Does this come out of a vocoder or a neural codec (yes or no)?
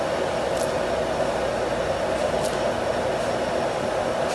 no